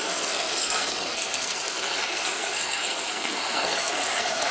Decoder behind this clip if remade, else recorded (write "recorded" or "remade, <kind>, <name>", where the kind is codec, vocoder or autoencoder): remade, codec, SNAC